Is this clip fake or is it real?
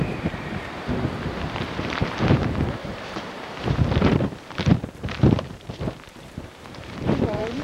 fake